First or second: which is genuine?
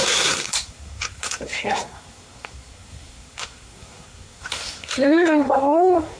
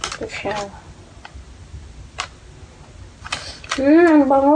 second